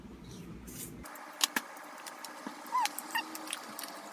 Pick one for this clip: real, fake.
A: real